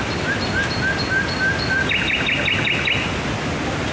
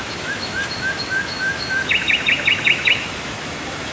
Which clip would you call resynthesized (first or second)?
second